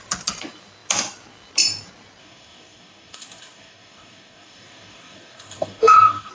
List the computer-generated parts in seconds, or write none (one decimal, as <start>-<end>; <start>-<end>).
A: 2.2-6.3